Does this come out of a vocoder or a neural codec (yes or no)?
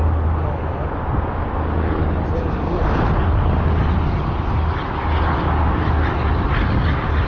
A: no